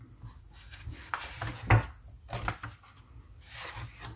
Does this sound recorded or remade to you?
recorded